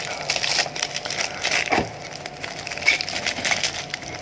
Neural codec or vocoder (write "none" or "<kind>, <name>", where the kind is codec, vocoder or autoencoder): none